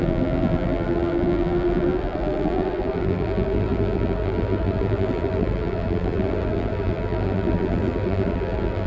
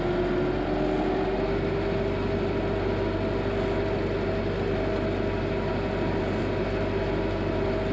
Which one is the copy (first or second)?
first